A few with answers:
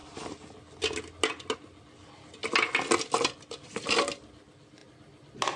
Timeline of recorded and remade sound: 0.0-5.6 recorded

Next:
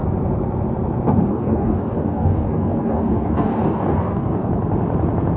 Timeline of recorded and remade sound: 0.0-1.3 recorded; 1.3-4.5 remade; 4.5-5.4 recorded

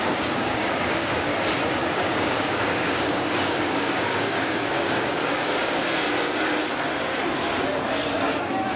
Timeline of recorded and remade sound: 0.0-1.3 remade; 1.3-1.8 recorded; 1.8-5.8 remade; 5.8-8.8 recorded

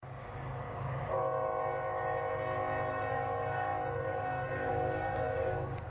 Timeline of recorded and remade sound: 0.0-1.5 remade; 1.5-2.9 recorded; 2.9-5.9 remade

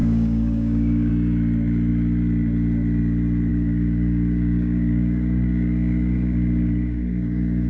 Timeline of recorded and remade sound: 0.0-1.1 remade; 1.1-3.5 recorded; 3.5-7.7 remade

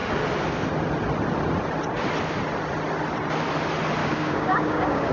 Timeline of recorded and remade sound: 0.0-4.0 recorded; 4.0-5.1 remade